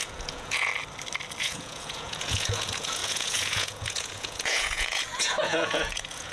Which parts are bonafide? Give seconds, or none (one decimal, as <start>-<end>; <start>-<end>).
0.7-1.4